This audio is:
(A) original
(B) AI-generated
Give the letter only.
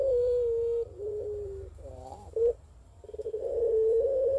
B